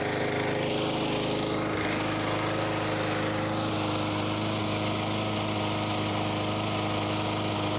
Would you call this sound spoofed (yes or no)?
no